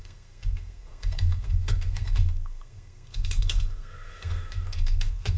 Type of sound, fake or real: fake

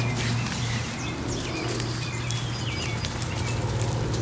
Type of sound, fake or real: real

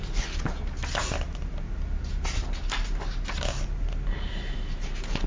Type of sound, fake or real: real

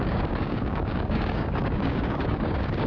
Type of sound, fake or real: fake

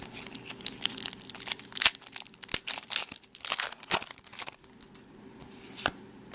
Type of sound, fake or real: real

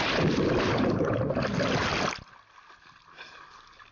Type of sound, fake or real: real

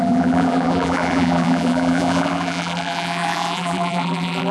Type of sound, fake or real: fake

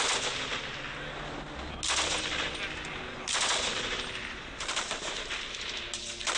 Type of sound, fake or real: real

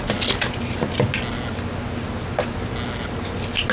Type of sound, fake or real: real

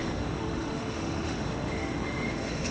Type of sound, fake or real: fake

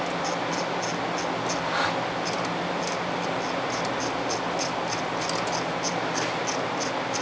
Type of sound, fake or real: real